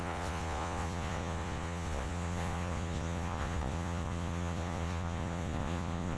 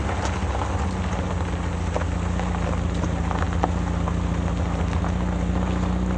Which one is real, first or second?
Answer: second